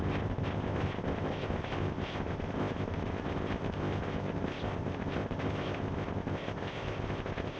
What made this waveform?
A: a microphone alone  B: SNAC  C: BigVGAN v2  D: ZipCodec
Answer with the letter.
D